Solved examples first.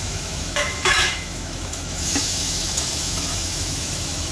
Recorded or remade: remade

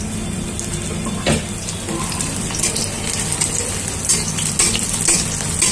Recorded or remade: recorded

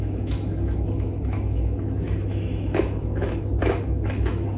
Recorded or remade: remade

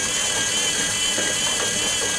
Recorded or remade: recorded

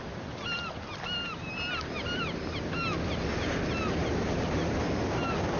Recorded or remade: recorded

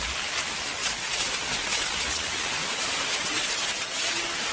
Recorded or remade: recorded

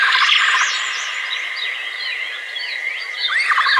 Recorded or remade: recorded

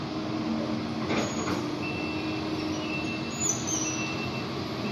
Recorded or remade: recorded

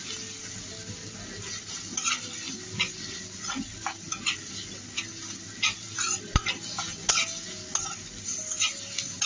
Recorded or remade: recorded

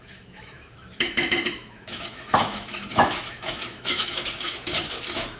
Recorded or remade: remade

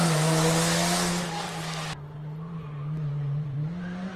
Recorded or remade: recorded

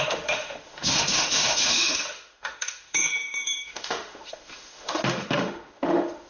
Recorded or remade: remade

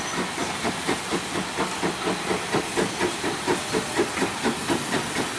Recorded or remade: recorded